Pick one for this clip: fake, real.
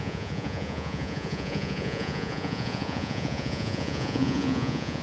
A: fake